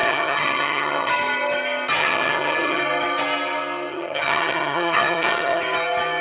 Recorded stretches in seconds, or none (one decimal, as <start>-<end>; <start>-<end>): 1.1-2.0; 2.8-3.9; 5.6-6.2